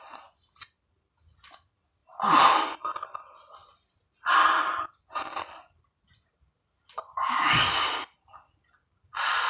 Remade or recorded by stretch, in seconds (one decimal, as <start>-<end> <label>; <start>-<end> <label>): 0.0-9.5 recorded